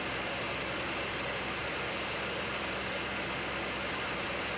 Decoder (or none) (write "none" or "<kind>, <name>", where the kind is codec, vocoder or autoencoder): vocoder, BigVGAN v2